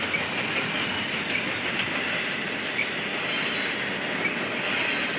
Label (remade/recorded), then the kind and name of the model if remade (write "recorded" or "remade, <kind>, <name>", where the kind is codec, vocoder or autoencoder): recorded